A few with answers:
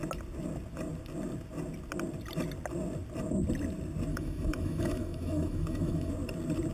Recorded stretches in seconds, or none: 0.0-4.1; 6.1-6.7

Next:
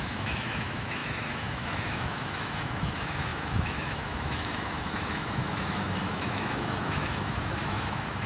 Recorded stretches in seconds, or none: none

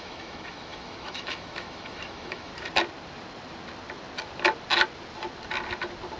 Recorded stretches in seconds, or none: 2.5-6.2